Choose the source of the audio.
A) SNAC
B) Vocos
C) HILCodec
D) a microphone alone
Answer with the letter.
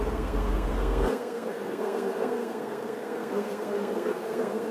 A